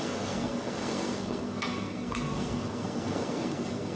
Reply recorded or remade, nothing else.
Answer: remade